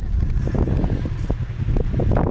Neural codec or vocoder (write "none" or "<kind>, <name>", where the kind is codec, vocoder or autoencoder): none